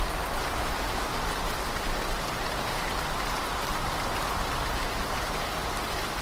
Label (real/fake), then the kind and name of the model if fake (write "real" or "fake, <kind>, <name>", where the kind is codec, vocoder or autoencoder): real